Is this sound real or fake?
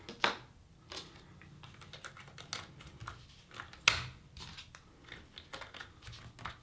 real